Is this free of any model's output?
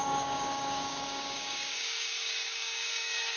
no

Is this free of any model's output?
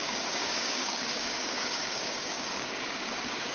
no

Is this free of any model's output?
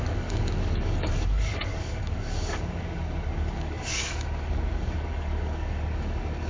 no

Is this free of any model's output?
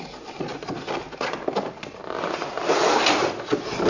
yes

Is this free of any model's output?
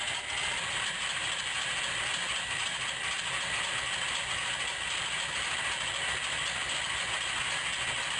yes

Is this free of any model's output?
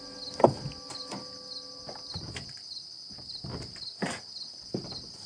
yes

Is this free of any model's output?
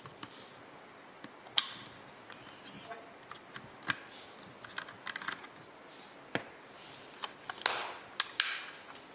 yes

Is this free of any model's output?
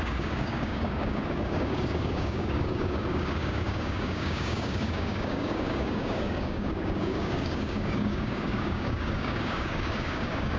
no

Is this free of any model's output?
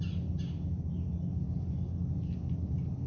yes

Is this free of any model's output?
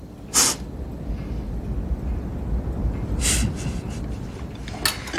yes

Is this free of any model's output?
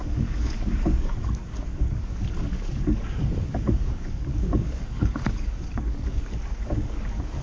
no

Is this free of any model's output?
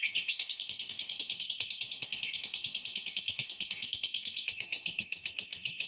no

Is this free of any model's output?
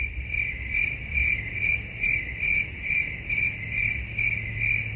yes